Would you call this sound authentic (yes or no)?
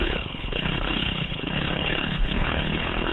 no